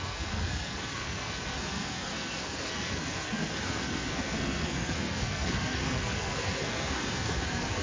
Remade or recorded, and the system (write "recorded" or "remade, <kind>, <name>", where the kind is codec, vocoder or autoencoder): remade, codec, SNAC